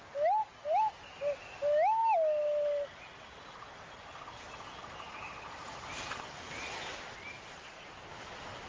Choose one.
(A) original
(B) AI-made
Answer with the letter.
A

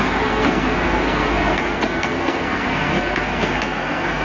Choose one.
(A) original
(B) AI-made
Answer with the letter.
B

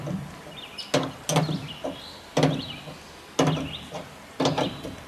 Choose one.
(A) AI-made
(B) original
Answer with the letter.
B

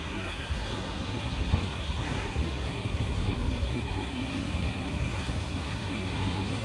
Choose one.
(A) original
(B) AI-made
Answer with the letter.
B